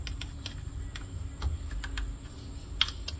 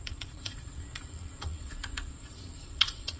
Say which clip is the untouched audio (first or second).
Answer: first